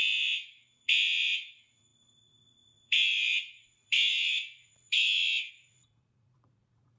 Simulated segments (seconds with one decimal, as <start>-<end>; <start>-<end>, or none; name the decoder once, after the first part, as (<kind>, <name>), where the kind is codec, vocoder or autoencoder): 0.0-7.0 (vocoder, Vocos)